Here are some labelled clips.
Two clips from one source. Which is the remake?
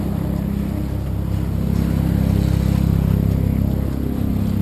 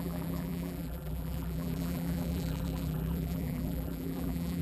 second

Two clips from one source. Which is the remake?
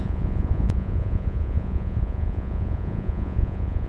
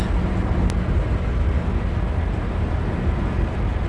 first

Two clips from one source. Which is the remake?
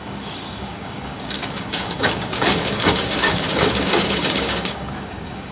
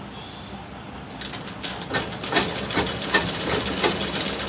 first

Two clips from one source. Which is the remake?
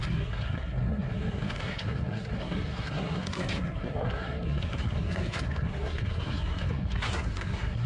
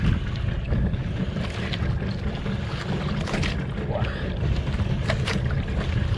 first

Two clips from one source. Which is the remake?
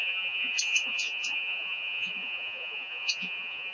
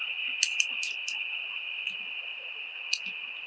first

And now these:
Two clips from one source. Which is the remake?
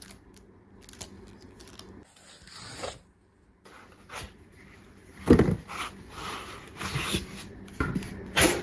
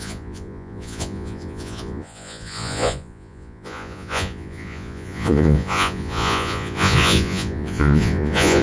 second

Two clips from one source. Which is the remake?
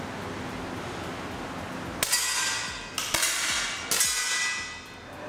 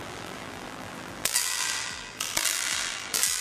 second